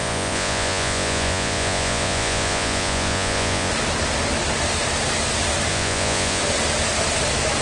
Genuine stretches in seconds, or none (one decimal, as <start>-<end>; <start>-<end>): 3.7-5.7; 6.4-7.6